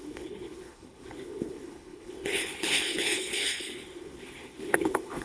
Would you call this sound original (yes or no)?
no